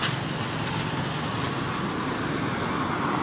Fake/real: real